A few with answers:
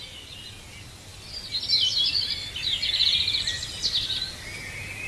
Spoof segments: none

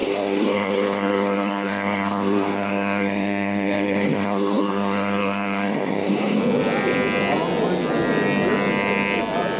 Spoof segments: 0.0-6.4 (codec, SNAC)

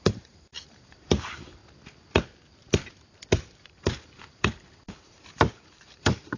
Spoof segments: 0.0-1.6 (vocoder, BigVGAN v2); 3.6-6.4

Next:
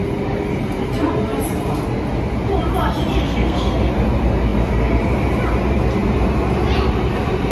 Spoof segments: 3.1-3.9 (codec, SNAC)

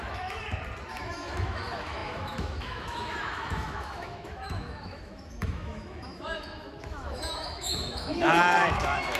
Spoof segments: 0.0-0.4 (autoencoder, DAC-VAE); 0.9-9.2

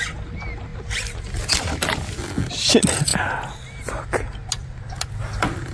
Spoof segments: none

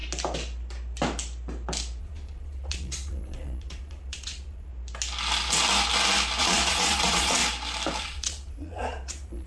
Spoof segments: 2.0-4.7 (vocoder, Vocos); 6.4-7.4; 8.0-9.5

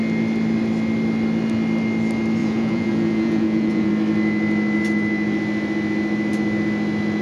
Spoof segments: 2.4-3.9 (vocoder, Vocos)